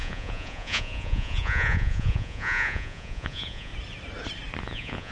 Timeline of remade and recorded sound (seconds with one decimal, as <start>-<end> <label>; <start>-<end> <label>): 0.0-3.7 remade; 3.7-4.6 recorded; 4.6-5.1 remade